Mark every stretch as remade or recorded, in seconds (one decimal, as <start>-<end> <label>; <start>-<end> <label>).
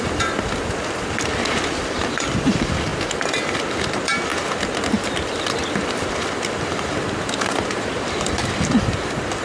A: 0.0-2.9 remade; 2.9-3.5 recorded; 3.5-4.3 remade; 4.3-5.8 recorded; 5.8-9.4 remade